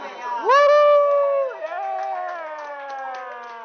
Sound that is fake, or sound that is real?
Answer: real